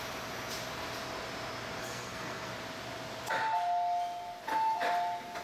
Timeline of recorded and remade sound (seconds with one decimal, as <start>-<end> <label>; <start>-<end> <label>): 0.0-1.8 recorded; 1.8-2.5 remade; 2.5-5.4 recorded